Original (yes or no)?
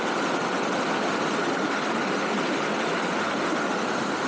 yes